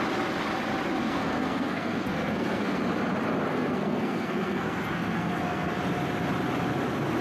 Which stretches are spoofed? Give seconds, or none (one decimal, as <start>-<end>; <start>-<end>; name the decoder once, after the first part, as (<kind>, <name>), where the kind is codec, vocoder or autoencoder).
1.0-2.8 (codec, SNAC); 3.5-5.7